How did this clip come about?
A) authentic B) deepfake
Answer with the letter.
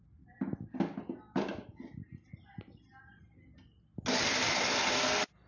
A